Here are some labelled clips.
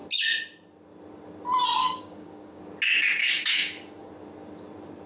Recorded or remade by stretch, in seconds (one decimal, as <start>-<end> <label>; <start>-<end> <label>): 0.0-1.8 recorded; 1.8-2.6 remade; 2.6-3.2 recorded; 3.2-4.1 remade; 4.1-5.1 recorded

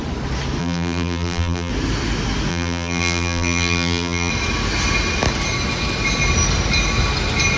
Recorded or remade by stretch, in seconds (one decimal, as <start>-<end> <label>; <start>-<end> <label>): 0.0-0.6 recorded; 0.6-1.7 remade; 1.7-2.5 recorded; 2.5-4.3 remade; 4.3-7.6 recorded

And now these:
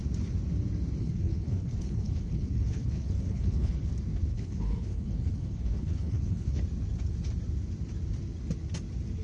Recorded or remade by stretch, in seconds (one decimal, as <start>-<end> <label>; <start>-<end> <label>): 0.0-1.0 recorded; 1.0-3.9 remade; 3.9-4.3 recorded; 4.3-6.6 remade; 6.6-9.2 recorded

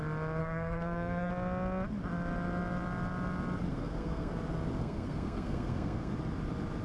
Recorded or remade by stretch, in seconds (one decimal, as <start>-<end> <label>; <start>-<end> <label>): 0.0-0.4 recorded; 0.4-1.3 remade; 1.3-3.7 recorded; 3.7-4.3 remade; 4.3-4.8 recorded; 4.8-6.1 remade; 6.1-6.8 recorded

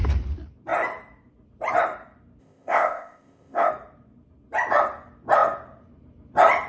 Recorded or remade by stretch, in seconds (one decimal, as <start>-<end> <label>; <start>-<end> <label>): 0.0-2.4 recorded; 2.4-3.7 remade; 3.7-6.7 recorded